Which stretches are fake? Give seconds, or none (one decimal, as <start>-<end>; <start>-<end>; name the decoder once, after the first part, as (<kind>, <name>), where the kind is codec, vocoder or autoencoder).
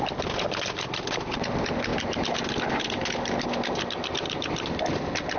none